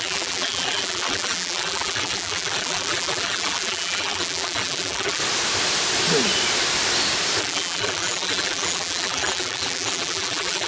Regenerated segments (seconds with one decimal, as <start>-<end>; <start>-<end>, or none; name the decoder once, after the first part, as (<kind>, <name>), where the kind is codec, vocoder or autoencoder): 0.0-5.2 (vocoder, BigVGAN v2); 7.4-10.7